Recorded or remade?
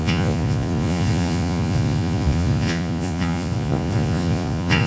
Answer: remade